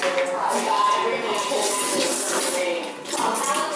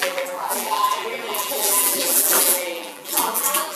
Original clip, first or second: first